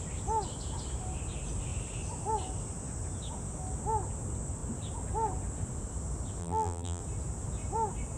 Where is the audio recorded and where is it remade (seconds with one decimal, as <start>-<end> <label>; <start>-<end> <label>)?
0.0-6.4 recorded; 6.4-7.0 remade; 7.0-8.2 recorded